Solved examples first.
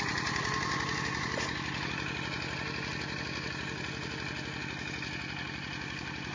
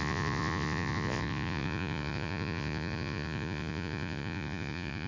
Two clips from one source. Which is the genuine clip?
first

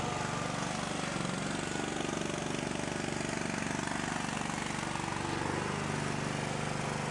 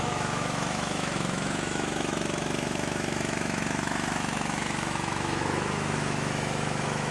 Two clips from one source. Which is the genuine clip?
first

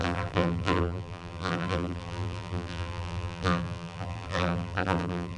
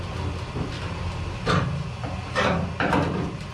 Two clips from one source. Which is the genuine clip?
second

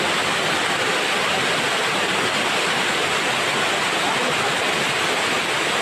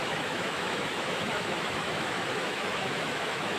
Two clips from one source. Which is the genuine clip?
first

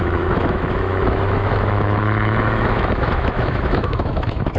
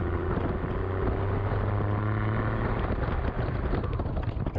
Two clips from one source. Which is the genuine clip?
second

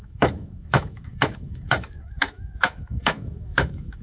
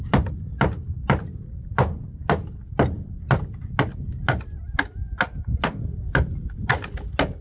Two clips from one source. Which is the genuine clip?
second